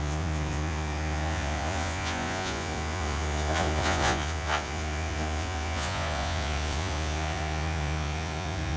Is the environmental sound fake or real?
fake